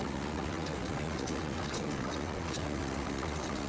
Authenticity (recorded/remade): remade